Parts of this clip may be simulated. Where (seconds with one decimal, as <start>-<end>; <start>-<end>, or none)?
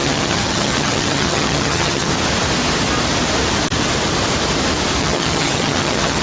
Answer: 0.0-2.1; 5.0-6.2